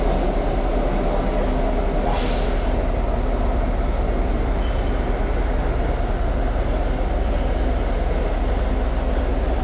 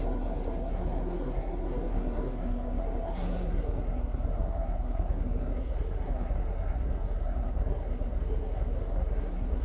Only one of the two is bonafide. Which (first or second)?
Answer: first